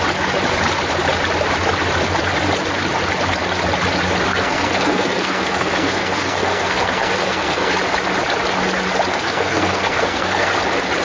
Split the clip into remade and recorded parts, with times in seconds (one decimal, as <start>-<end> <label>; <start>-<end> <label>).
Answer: 0.0-4.3 recorded; 4.3-7.7 remade; 7.7-9.1 recorded; 9.1-10.5 remade; 10.5-11.0 recorded